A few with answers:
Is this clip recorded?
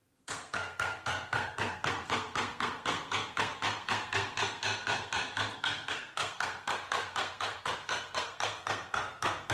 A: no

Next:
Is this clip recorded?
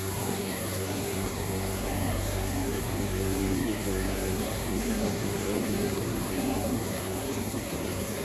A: no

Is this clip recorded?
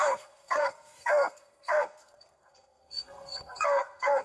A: no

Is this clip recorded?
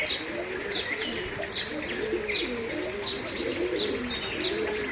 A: yes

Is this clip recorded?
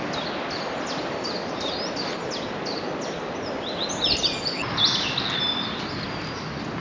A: yes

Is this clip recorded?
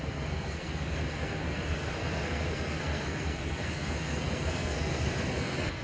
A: no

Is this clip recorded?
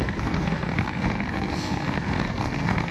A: no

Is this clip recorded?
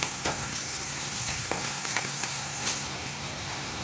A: no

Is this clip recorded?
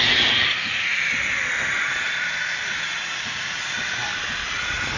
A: yes